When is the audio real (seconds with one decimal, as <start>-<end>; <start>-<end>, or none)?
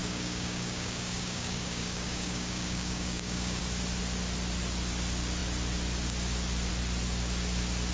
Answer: 3.6-7.9